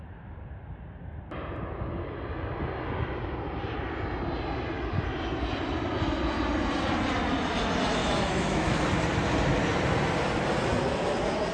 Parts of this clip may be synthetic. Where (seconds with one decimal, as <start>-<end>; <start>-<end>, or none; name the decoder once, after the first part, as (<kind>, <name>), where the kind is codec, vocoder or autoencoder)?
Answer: 8.0-8.8 (autoencoder, DAC-VAE)